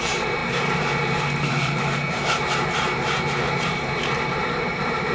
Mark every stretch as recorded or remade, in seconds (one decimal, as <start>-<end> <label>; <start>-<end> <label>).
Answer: 0.0-5.1 remade